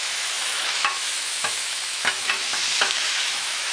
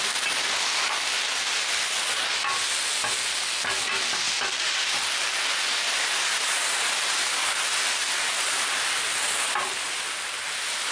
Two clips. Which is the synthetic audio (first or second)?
first